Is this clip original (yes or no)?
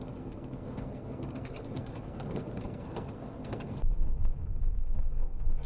no